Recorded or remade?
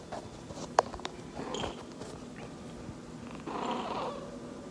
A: recorded